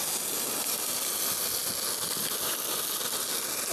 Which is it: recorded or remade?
recorded